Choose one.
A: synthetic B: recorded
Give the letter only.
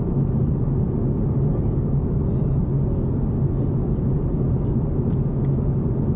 B